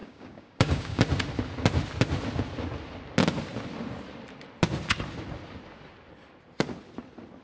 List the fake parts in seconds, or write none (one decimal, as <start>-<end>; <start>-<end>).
0.0-1.0